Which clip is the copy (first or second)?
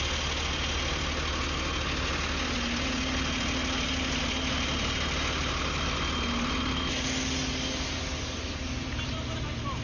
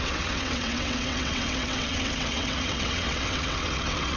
second